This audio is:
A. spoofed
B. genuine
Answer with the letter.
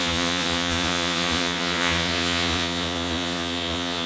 A